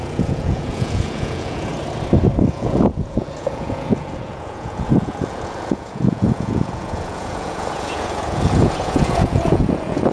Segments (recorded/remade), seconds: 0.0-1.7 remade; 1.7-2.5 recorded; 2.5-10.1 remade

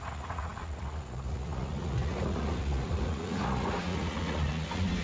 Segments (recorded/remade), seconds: 0.0-5.0 remade

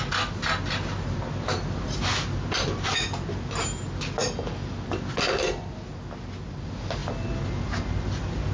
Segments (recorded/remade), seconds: 0.0-8.5 recorded

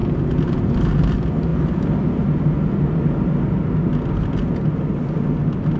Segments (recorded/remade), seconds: 0.0-5.8 recorded

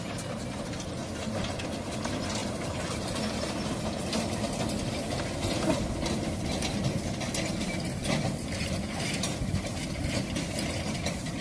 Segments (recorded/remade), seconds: 0.0-2.4 recorded; 2.4-3.5 remade; 3.5-11.4 recorded

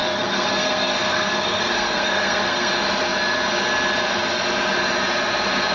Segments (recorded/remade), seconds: 0.0-2.7 remade; 2.7-5.7 recorded